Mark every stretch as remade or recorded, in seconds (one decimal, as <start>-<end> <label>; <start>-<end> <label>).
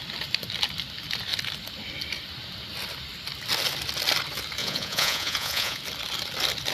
0.0-4.6 recorded; 4.6-5.8 remade; 5.8-6.7 recorded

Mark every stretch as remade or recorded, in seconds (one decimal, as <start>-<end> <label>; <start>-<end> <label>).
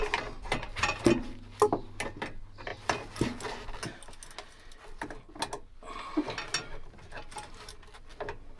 0.0-8.6 recorded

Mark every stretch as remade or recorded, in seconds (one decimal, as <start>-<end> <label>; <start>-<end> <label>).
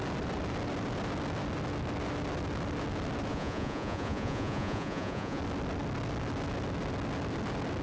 0.0-3.3 recorded; 3.3-5.4 remade; 5.4-7.8 recorded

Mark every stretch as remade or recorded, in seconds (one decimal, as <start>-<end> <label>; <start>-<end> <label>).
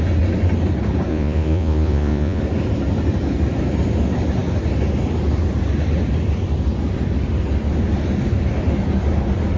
0.0-1.1 recorded; 1.1-2.4 remade; 2.4-9.6 recorded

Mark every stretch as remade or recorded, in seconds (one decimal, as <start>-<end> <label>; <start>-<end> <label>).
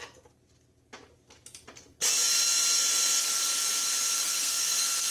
0.0-4.2 recorded; 4.2-5.1 remade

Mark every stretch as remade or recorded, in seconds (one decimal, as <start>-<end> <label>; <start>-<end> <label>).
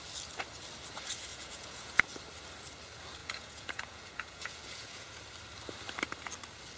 0.0-1.3 recorded; 1.3-2.1 remade; 2.1-3.2 recorded; 3.2-5.2 remade; 5.2-6.8 recorded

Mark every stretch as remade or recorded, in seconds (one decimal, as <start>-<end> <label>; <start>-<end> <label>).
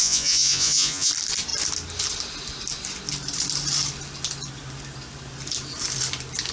0.0-1.1 remade; 1.1-6.5 recorded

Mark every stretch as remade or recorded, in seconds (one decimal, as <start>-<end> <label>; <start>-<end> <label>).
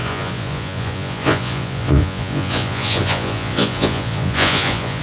0.0-5.0 remade